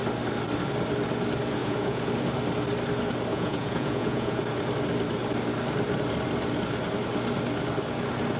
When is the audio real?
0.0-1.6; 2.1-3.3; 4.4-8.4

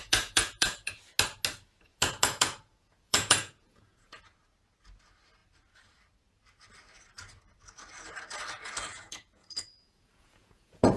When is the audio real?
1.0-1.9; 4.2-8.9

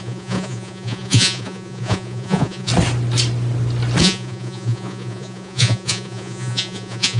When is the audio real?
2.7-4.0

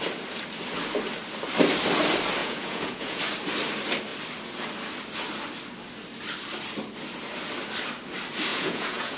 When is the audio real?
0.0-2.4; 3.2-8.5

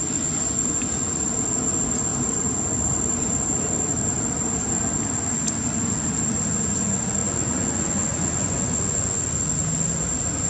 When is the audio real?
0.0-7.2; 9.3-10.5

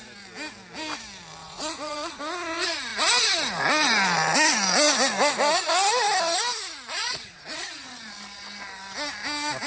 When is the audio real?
0.0-1.4; 2.2-7.0; 7.7-9.7

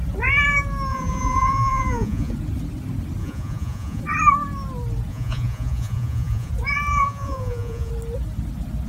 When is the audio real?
0.0-0.9; 2.3-3.2; 4.0-5.1; 6.5-7.0; 7.9-8.9

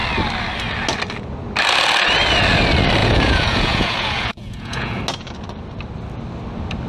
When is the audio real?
0.0-3.0; 5.0-6.9